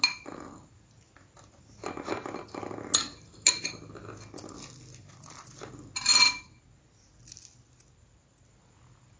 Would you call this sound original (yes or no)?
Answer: yes